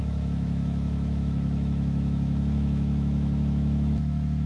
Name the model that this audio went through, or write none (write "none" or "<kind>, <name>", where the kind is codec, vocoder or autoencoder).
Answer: autoencoder, DAC-VAE